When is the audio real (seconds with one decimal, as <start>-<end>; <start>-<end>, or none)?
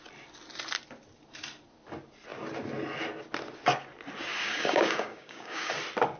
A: 0.0-4.3; 5.7-6.2